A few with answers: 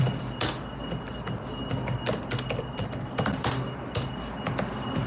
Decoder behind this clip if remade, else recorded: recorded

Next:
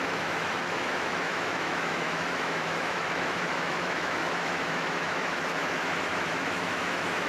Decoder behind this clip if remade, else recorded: remade, autoencoder, DAC-VAE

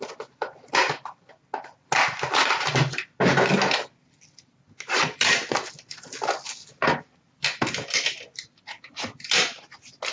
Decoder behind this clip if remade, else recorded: recorded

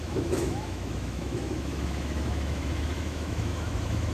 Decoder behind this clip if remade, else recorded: remade, autoencoder, DAC-VAE